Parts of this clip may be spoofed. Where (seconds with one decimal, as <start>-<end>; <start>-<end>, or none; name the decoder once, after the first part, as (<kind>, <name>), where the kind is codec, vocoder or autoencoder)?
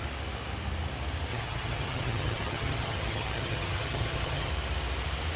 1.3-4.5 (vocoder, HiFi-GAN)